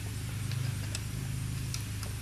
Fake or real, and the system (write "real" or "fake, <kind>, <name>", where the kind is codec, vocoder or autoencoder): real